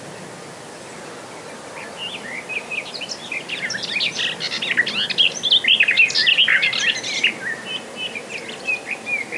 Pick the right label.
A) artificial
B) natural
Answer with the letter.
B